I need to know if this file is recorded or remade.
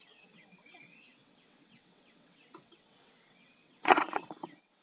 remade